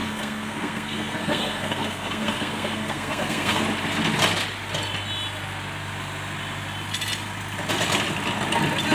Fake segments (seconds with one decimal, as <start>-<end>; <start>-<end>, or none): 0.0-3.6